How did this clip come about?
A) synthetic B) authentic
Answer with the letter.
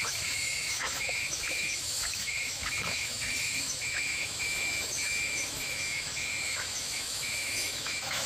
A